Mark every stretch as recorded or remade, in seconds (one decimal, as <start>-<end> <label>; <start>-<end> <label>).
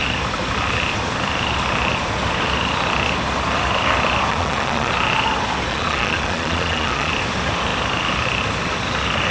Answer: 0.0-4.3 recorded; 4.3-4.9 remade; 4.9-5.7 recorded; 5.7-7.1 remade; 7.1-9.3 recorded